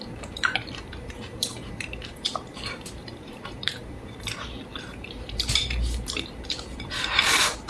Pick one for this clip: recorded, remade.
remade